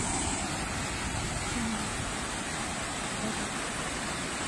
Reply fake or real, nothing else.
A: real